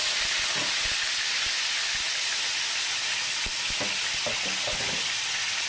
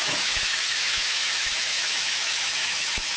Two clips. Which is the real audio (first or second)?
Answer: first